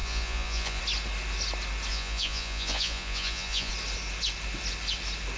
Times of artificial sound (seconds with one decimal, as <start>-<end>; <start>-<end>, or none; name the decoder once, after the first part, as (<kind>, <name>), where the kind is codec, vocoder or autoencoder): 0.0-0.8 (vocoder, Vocos); 1.9-3.7